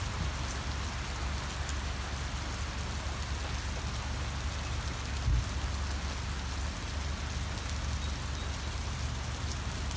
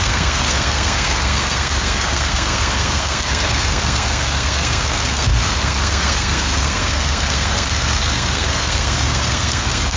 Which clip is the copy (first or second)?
second